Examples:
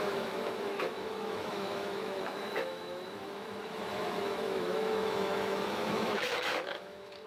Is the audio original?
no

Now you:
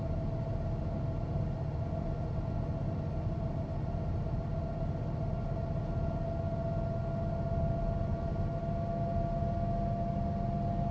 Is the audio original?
yes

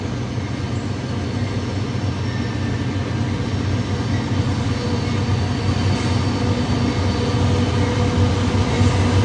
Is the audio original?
yes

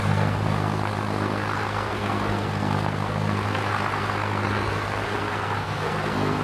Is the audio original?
no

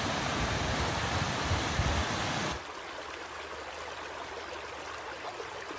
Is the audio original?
yes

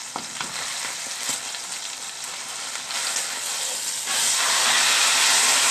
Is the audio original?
yes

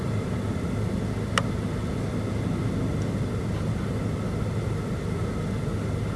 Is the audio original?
yes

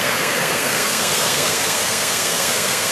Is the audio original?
no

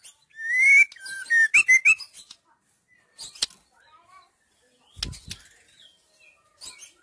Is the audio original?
yes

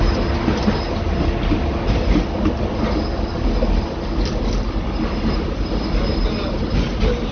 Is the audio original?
yes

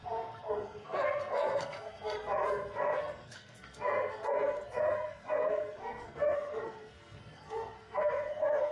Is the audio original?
no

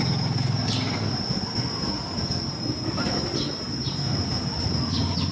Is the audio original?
yes